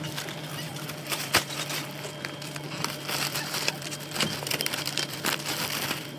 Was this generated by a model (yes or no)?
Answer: yes